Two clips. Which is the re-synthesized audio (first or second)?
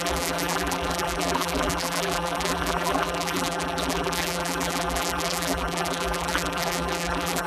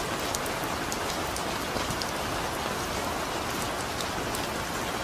first